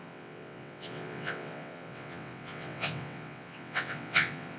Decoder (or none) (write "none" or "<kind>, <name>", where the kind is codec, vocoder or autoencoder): vocoder, WaveNeXt